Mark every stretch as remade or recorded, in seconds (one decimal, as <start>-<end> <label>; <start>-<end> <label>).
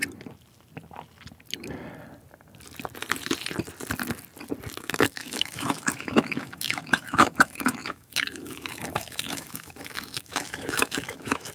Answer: 0.0-4.8 recorded; 4.8-11.5 remade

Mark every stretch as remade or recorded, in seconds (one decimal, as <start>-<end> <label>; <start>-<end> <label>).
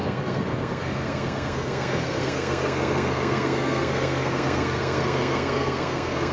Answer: 0.0-6.3 remade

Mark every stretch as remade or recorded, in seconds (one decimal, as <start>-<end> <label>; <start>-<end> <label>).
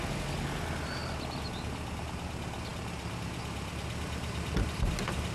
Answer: 0.0-5.3 recorded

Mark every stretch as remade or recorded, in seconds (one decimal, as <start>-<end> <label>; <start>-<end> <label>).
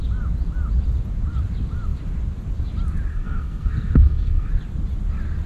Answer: 0.0-3.1 recorded; 3.1-4.5 remade; 4.5-5.5 recorded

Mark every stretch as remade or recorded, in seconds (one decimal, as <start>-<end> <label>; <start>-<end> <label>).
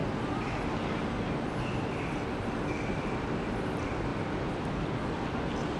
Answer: 0.0-4.1 recorded; 4.1-4.7 remade; 4.7-5.8 recorded